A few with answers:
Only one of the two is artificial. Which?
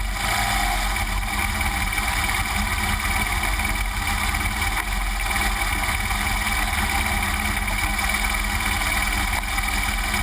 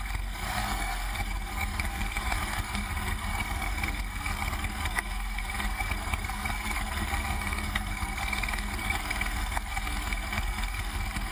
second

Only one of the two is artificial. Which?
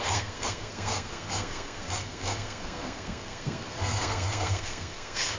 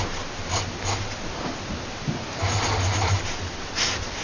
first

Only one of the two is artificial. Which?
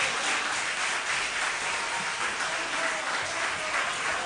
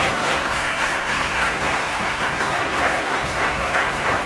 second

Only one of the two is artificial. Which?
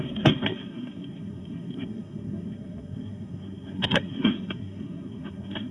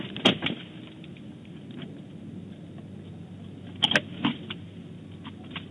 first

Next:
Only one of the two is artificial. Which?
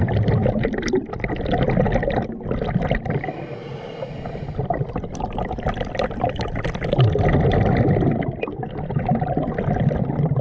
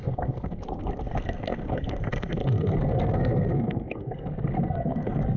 second